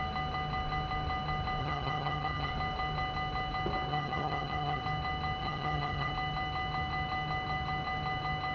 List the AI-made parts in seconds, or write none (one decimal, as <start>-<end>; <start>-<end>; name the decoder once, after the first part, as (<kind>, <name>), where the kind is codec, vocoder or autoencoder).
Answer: 1.6-2.5 (vocoder, HiFi-GAN); 3.9-4.8; 5.4-6.1